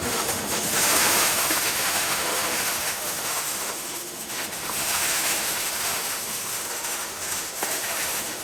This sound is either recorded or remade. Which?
remade